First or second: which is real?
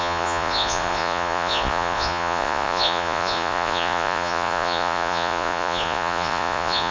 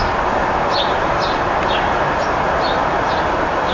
second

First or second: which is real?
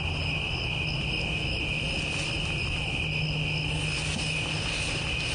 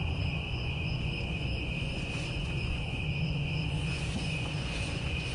first